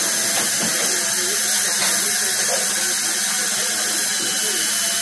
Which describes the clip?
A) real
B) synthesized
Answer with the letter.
A